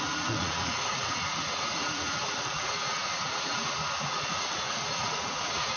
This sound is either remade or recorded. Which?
remade